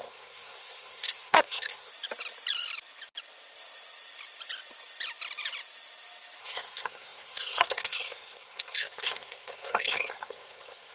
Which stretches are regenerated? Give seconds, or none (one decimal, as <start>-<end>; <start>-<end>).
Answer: 0.0-1.9; 6.4-10.9